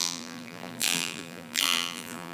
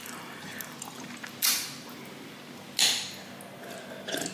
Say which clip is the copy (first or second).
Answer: first